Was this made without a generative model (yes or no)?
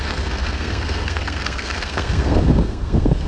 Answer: no